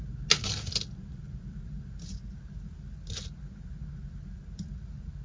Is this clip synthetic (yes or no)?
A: no